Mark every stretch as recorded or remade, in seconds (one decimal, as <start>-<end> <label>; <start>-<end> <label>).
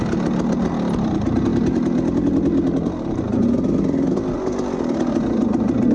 0.0-5.9 recorded